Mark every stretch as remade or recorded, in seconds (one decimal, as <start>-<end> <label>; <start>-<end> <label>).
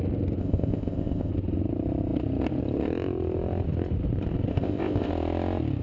0.0-0.4 recorded; 0.4-1.3 remade; 1.3-4.5 recorded; 4.5-5.1 remade; 5.1-5.8 recorded